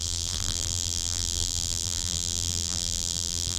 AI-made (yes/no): yes